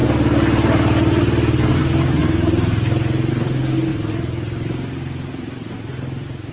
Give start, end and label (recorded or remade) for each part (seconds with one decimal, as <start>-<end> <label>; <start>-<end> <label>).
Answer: 0.0-1.7 recorded; 1.7-2.2 remade; 2.2-3.3 recorded; 3.3-3.9 remade; 3.9-5.3 recorded; 5.3-6.5 remade

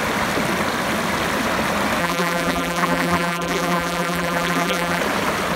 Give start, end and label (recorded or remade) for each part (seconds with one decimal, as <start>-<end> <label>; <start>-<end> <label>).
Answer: 0.0-2.0 recorded; 2.0-5.0 remade; 5.0-5.6 recorded

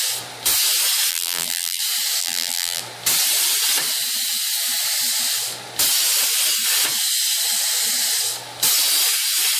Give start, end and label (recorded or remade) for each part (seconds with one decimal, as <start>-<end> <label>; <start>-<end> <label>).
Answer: 0.0-1.1 recorded; 1.1-1.8 remade; 1.8-2.2 recorded; 2.2-2.8 remade; 2.8-9.6 recorded